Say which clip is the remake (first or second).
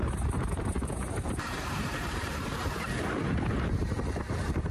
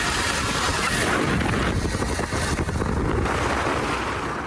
first